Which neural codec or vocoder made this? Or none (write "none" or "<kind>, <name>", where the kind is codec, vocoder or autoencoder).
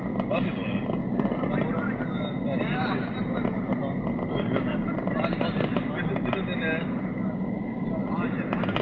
none